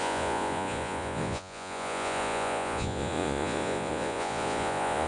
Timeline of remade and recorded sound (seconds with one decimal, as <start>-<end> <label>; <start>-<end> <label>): 0.0-5.1 remade